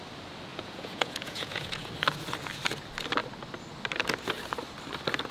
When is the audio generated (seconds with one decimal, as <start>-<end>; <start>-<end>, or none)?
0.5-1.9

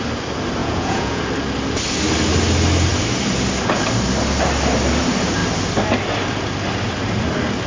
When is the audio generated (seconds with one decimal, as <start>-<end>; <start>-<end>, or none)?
0.6-1.2

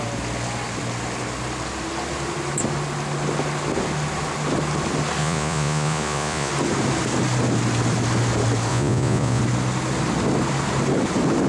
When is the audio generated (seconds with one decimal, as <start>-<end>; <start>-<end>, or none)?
5.2-6.5; 8.7-9.4

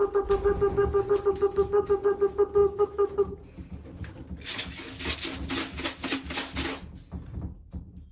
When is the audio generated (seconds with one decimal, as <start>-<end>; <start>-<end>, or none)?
none

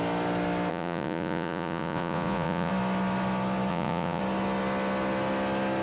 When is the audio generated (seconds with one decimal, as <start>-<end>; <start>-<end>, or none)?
0.7-2.7; 3.7-4.2